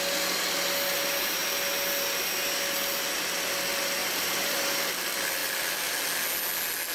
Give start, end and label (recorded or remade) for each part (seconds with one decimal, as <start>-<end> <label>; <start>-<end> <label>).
0.0-4.0 recorded; 4.0-4.6 remade; 4.6-5.4 recorded; 5.4-5.9 remade; 5.9-6.9 recorded